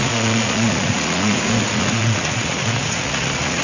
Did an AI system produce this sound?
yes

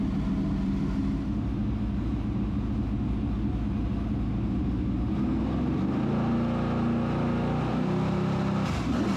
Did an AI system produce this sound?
no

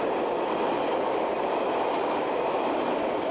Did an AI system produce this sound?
no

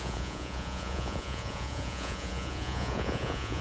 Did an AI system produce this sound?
yes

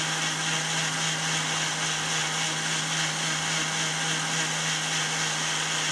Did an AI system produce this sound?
no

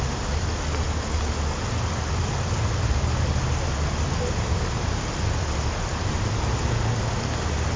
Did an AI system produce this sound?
no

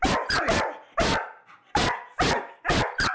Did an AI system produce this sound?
no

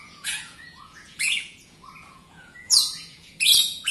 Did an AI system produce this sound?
yes